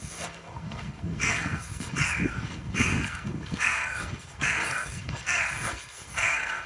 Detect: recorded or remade remade